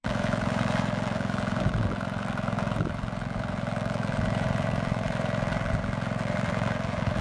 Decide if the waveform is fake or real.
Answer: fake